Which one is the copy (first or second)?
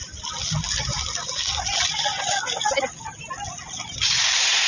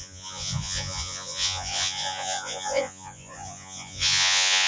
second